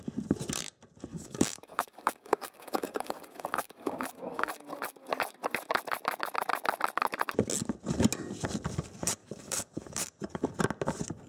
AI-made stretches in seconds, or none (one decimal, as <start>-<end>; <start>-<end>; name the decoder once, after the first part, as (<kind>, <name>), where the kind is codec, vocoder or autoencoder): 1.1-4.5 (codec, DAC); 9.2-10.5